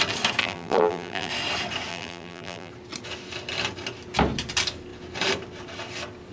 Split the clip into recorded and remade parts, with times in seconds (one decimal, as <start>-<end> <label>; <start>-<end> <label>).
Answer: 0.0-0.4 recorded; 0.4-1.3 remade; 1.3-1.9 recorded; 1.9-2.7 remade; 2.7-6.3 recorded